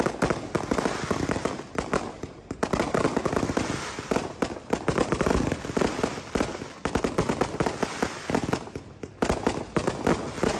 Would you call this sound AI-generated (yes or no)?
no